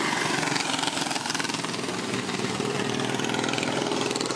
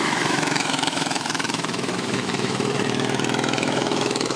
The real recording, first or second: first